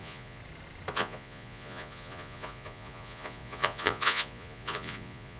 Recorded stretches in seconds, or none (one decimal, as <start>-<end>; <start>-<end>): 0.4-0.9